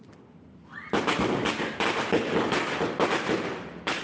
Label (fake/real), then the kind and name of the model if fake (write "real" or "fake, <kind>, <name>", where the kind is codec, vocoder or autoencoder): real